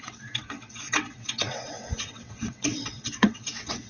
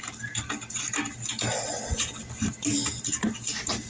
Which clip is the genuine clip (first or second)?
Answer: second